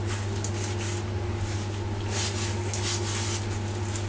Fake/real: real